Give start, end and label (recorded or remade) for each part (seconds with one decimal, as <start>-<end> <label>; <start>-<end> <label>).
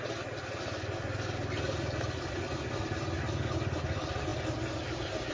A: 0.0-5.3 recorded